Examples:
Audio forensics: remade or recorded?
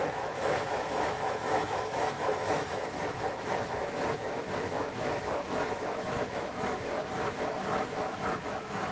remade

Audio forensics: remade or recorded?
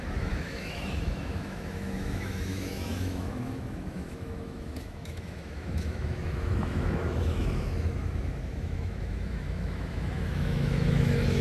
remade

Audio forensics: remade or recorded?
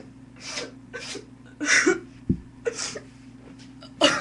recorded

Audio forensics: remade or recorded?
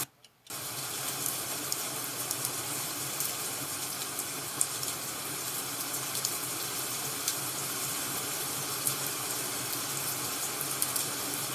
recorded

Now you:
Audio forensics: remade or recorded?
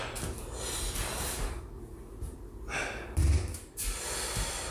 recorded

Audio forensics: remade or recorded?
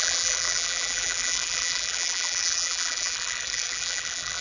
remade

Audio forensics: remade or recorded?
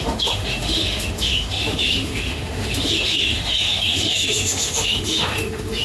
remade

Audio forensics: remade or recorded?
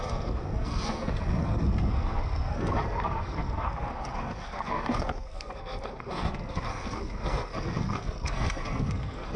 remade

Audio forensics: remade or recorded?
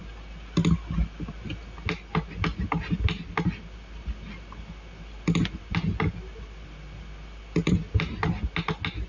recorded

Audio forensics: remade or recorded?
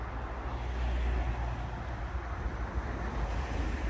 recorded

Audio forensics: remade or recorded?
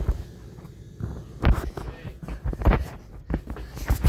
recorded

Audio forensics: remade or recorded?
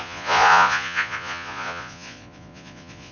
remade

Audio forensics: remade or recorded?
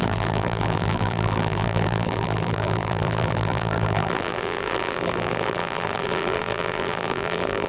remade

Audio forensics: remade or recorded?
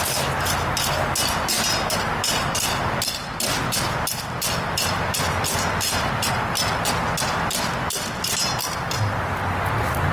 recorded